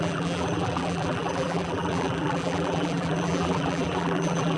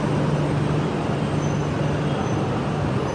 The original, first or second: second